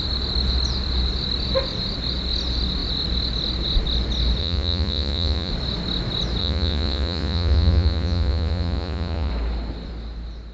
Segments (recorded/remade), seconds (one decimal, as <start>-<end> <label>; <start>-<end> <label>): 0.0-4.4 recorded; 4.4-5.5 remade; 5.5-6.4 recorded; 6.4-9.3 remade; 9.3-10.5 recorded